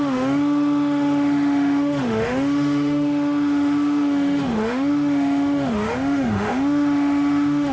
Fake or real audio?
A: fake